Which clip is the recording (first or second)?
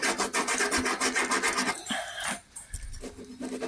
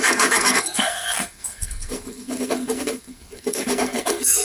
first